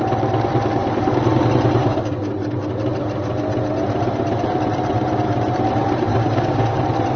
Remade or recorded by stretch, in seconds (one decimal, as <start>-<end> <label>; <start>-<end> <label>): 0.0-1.8 recorded; 1.8-2.3 remade; 2.3-6.1 recorded; 6.1-6.8 remade; 6.8-7.2 recorded